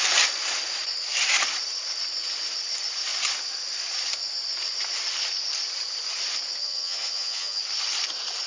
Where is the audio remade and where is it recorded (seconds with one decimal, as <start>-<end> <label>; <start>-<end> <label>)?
0.0-6.6 recorded; 6.6-7.6 remade; 7.6-8.5 recorded